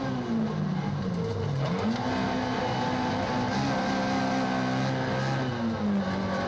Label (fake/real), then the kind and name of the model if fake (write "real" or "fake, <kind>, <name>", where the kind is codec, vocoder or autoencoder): real